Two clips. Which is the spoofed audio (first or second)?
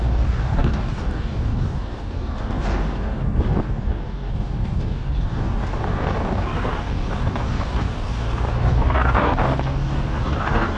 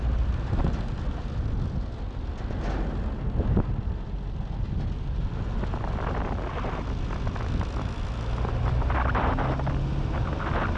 first